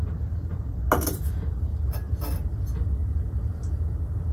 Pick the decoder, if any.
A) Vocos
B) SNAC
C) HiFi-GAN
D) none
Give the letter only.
D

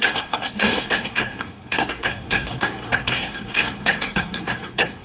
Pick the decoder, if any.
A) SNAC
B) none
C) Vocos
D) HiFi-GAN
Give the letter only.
A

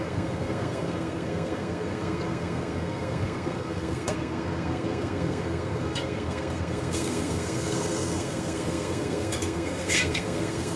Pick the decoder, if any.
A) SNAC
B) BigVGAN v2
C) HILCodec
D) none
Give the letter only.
A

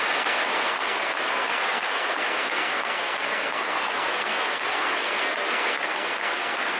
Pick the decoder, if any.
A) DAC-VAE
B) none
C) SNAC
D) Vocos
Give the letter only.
C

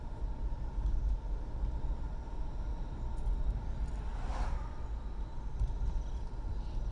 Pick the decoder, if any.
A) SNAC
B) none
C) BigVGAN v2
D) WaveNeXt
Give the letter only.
B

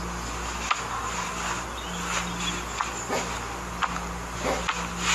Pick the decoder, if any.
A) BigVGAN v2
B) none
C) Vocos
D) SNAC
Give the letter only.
B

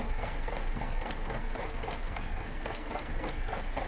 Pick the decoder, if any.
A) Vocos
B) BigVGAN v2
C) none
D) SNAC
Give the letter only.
D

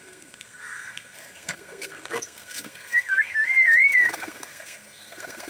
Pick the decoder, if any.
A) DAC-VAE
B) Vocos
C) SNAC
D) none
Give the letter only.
C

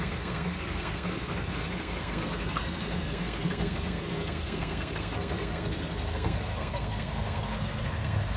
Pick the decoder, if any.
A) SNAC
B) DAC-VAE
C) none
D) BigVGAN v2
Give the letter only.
A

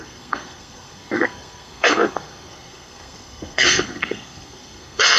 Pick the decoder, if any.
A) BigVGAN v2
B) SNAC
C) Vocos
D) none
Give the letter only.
B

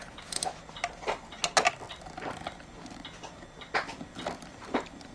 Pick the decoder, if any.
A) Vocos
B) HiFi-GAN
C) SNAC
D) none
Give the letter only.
D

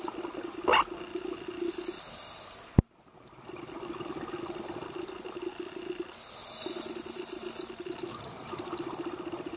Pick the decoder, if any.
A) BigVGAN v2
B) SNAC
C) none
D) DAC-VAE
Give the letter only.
C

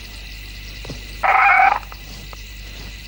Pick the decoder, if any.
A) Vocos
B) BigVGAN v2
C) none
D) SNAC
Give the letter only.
C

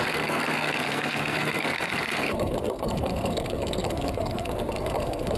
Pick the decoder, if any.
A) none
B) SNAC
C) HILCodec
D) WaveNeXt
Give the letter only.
B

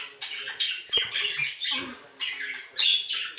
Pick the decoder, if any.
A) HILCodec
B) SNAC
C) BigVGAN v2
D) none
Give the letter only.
D